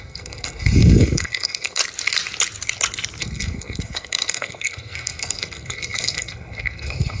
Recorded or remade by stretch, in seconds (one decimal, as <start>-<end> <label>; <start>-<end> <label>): 0.0-1.8 remade; 1.8-3.2 recorded; 3.2-7.2 remade